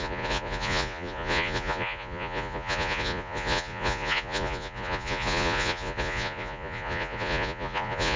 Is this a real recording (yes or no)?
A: no